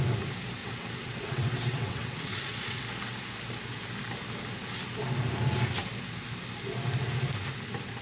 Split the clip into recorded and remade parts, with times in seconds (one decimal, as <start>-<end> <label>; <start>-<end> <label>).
0.0-0.6 recorded; 0.6-2.8 remade; 2.8-8.0 recorded